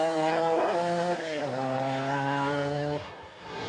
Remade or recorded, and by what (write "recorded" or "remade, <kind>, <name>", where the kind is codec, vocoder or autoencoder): remade, codec, SNAC